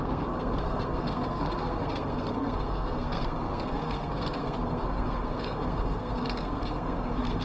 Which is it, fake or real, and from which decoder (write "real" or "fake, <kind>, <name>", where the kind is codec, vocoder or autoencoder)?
fake, codec, SNAC